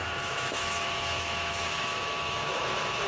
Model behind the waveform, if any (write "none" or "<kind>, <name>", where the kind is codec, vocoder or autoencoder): autoencoder, DAC-VAE